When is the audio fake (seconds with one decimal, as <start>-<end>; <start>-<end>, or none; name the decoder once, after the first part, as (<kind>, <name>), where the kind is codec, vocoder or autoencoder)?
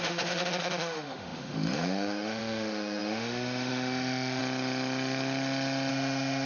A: 0.0-4.4 (autoencoder, DAC-VAE); 5.9-6.5